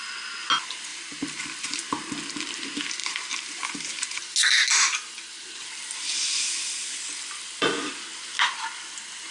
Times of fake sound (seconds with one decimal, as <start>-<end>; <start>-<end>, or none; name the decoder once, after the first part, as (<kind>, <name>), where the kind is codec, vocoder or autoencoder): 0.9-2.0 (vocoder, BigVGAN v2); 3.0-4.2